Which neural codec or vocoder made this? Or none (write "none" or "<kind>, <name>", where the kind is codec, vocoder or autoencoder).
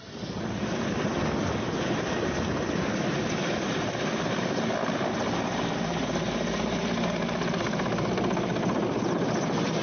none